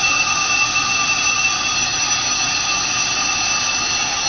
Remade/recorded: recorded